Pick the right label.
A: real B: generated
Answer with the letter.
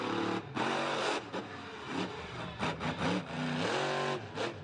A